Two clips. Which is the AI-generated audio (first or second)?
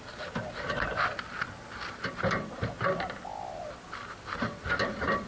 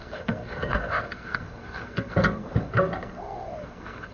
second